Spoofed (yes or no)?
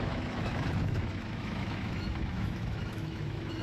yes